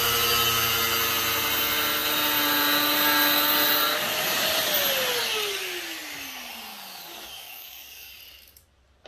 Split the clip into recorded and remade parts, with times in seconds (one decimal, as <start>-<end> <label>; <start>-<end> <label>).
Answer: 0.0-6.7 recorded; 6.7-8.2 remade; 8.2-9.1 recorded